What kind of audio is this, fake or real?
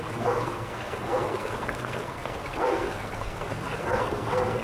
fake